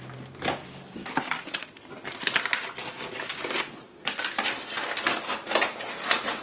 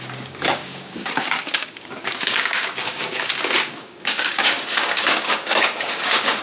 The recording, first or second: first